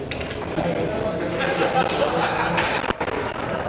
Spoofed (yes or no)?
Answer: no